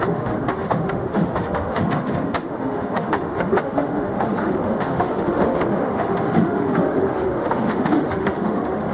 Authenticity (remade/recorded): remade